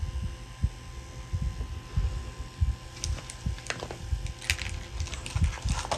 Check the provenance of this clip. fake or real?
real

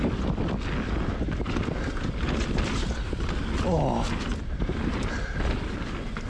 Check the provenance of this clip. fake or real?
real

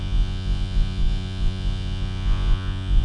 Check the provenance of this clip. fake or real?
fake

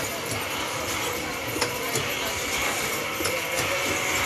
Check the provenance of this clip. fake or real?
real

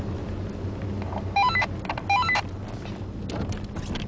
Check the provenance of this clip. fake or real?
real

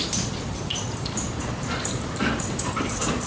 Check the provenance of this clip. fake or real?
fake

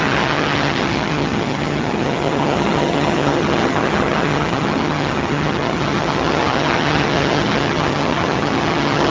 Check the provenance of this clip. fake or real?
fake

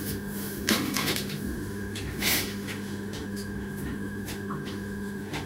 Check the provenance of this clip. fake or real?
fake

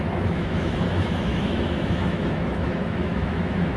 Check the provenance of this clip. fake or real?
fake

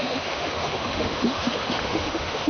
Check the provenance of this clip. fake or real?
fake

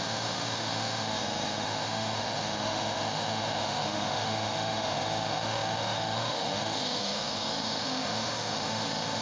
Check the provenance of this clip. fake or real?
fake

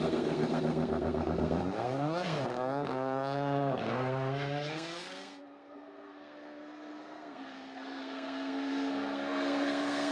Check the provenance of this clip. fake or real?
fake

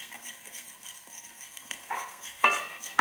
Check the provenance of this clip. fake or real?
fake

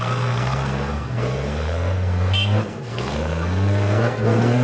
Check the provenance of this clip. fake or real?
fake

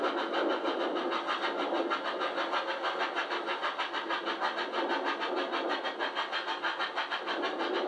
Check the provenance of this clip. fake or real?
real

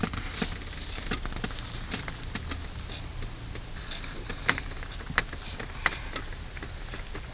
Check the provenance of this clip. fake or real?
real